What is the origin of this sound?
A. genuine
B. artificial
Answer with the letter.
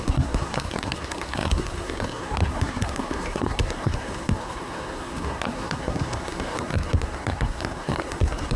B